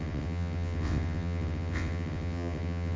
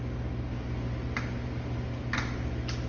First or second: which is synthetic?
first